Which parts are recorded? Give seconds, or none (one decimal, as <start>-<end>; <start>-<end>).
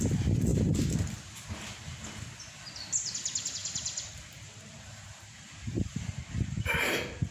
0.0-3.6